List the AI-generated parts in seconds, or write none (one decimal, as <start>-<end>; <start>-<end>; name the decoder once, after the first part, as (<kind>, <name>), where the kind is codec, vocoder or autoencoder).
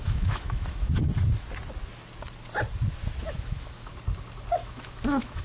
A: 0.0-1.1 (autoencoder, DAC-VAE); 3.2-3.9; 4.5-5.4